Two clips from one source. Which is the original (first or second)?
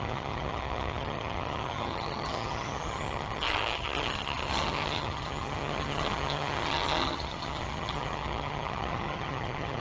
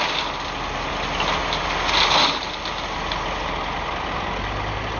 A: second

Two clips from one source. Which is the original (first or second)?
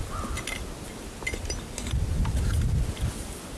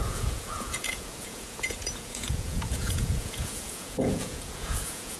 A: first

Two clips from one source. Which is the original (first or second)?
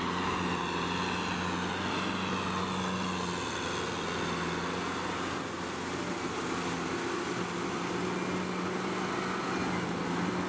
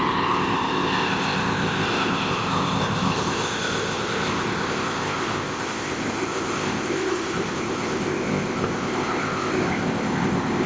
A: first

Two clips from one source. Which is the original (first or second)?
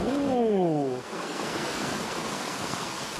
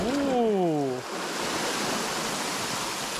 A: second